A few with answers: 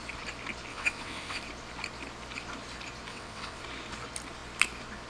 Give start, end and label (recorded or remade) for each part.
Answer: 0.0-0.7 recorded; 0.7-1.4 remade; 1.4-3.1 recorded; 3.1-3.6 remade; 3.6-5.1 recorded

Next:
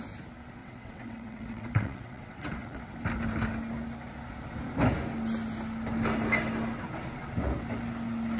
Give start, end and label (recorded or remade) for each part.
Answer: 0.0-0.6 recorded; 0.6-2.9 remade; 2.9-8.4 recorded

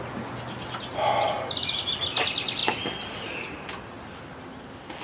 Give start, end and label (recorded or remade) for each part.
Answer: 0.0-5.0 recorded

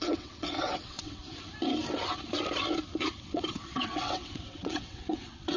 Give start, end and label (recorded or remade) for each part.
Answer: 0.0-1.2 remade; 1.2-3.2 recorded; 3.2-5.6 remade

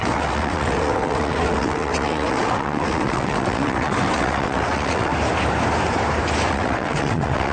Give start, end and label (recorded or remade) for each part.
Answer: 0.0-5.1 remade; 5.1-6.5 recorded; 6.5-7.5 remade

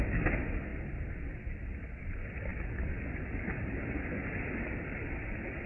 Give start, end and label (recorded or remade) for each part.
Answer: 0.0-5.7 recorded

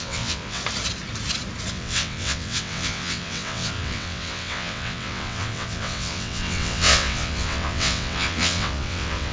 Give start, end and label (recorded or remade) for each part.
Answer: 0.0-0.6 remade; 0.6-1.7 recorded; 1.7-9.3 remade

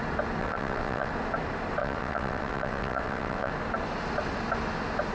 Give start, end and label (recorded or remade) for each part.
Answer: 0.0-0.4 recorded; 0.4-1.1 remade; 1.1-1.8 recorded; 1.8-3.5 remade; 3.5-5.1 recorded